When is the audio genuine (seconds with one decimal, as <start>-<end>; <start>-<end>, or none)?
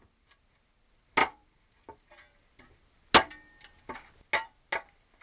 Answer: 0.0-5.2